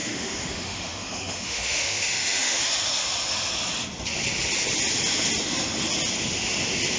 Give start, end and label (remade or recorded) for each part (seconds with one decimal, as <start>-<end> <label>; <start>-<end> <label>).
0.0-2.6 remade; 2.6-7.0 recorded